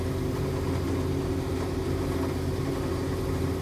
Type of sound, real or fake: real